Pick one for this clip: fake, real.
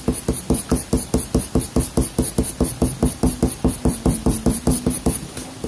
real